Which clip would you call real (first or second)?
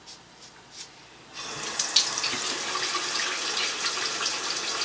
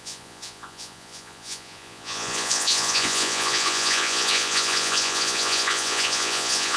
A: first